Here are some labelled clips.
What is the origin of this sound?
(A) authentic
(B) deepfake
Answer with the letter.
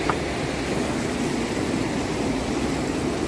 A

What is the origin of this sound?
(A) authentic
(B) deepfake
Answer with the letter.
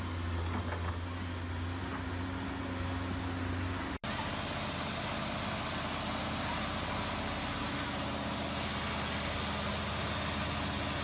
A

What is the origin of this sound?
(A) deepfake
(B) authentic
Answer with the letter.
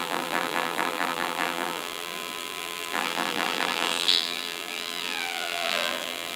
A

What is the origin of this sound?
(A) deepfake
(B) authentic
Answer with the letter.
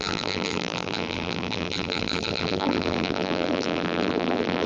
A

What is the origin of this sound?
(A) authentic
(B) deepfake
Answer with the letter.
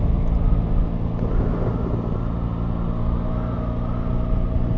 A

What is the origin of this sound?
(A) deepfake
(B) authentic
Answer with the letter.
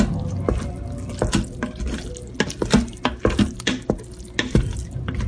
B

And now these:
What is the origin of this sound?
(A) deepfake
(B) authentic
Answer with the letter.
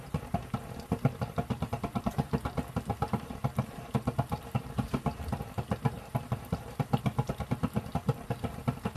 A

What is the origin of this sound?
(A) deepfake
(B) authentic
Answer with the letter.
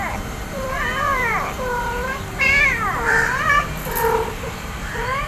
A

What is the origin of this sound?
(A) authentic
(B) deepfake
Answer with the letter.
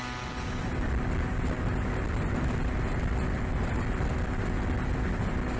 A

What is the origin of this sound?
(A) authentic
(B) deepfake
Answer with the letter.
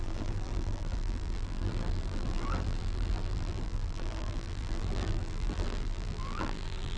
B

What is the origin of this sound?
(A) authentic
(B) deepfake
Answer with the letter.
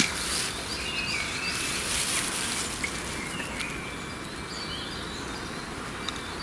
A